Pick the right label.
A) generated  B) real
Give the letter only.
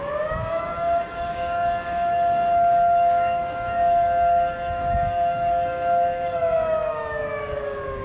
A